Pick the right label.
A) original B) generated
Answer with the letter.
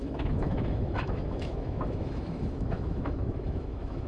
B